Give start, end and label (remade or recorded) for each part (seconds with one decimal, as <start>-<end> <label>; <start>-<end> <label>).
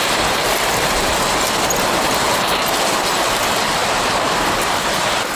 0.0-1.1 remade; 1.1-1.9 recorded; 1.9-5.4 remade